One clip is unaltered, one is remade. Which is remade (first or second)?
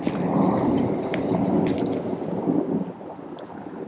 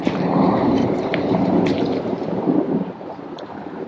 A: second